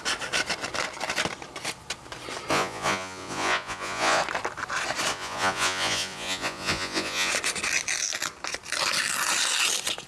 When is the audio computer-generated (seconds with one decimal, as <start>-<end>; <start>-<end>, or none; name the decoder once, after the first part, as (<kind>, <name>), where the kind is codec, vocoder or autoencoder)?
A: 2.5-4.2 (vocoder, Vocos); 5.1-7.3